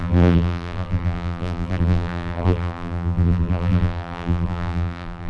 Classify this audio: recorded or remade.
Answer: remade